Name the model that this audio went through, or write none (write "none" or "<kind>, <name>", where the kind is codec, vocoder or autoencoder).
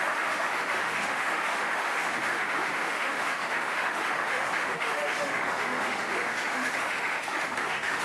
autoencoder, DAC-VAE